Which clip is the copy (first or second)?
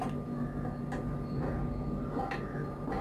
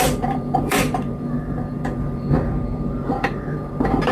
second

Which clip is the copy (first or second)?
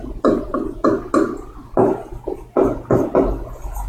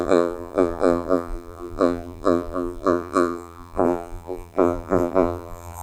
second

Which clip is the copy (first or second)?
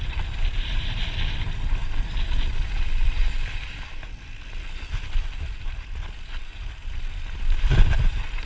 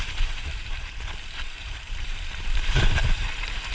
second